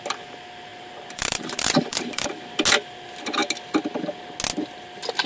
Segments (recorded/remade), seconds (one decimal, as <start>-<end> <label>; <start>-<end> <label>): 0.0-0.7 recorded; 0.7-2.4 remade; 2.4-5.3 recorded